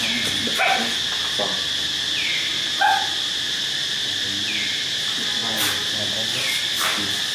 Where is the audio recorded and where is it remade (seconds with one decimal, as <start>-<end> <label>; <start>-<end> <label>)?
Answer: 0.0-7.3 recorded